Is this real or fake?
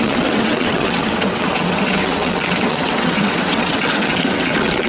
fake